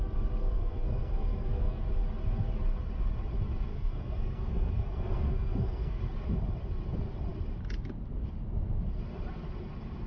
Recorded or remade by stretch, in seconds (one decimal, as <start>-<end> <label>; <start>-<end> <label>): 0.0-0.4 recorded; 0.4-1.8 remade; 1.8-3.7 recorded; 3.7-6.0 remade; 6.0-10.1 recorded